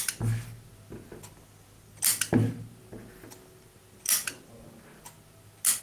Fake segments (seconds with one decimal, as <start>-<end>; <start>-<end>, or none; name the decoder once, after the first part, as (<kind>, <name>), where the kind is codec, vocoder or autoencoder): none